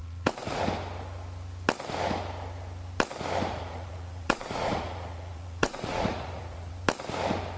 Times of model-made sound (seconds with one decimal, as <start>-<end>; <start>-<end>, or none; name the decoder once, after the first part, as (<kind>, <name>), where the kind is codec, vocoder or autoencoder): 0.0-0.6 (vocoder, Vocos); 3.5-6.7